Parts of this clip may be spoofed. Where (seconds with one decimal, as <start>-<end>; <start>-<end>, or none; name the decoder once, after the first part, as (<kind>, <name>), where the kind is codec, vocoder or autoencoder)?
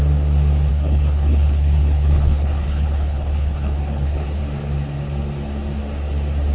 0.7-4.4 (codec, HILCodec)